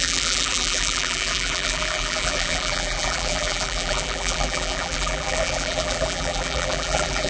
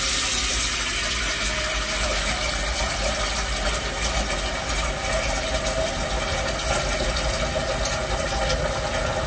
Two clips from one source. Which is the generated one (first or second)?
first